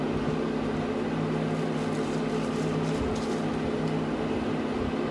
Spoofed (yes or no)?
no